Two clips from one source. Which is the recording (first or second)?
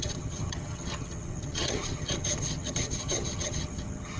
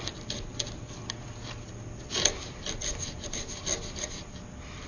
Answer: second